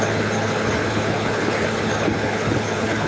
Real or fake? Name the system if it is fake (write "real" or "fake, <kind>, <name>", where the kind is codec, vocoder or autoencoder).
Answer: fake, codec, HILCodec